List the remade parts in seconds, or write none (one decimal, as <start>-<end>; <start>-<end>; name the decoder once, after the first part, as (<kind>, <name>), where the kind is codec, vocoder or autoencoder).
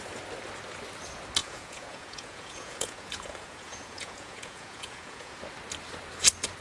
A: 1.4-5.4 (vocoder, Vocos)